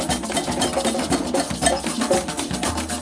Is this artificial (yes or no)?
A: no